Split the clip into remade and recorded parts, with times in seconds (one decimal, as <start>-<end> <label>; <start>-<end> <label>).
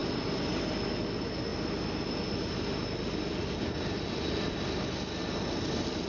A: 0.0-6.1 recorded